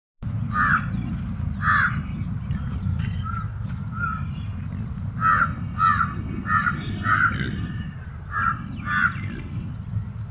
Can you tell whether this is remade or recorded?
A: recorded